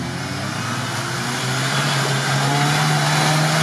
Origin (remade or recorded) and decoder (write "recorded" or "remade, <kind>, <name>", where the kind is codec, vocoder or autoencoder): recorded